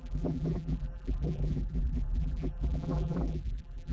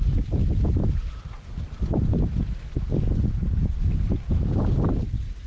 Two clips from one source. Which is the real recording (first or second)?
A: second